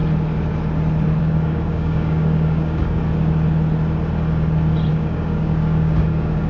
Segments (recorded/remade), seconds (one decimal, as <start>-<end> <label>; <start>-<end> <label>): 0.0-1.2 recorded; 1.2-3.0 remade; 3.0-4.9 recorded; 4.9-6.5 remade